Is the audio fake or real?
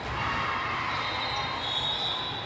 real